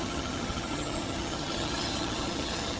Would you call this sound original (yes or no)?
no